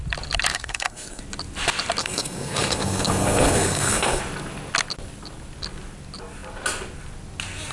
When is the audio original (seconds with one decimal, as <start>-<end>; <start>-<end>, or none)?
0.0-0.5; 1.2-2.0; 4.2-7.7